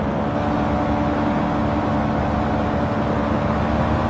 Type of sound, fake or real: real